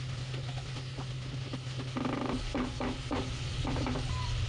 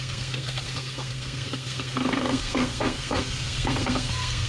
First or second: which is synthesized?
second